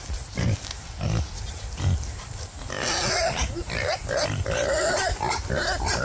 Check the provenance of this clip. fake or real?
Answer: real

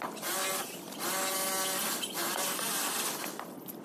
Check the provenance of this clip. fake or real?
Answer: real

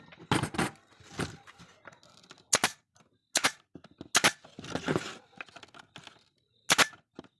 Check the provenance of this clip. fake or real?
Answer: real